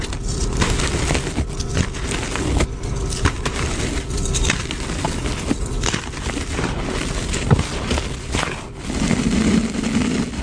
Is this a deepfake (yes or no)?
no